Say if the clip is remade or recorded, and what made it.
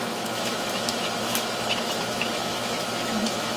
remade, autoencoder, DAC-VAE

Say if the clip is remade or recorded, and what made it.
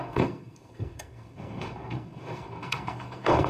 remade, codec, SNAC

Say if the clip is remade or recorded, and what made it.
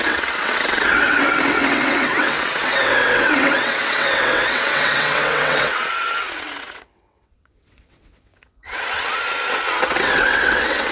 remade, vocoder, WaveNeXt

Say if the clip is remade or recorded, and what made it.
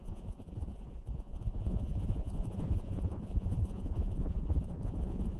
remade, vocoder, Vocos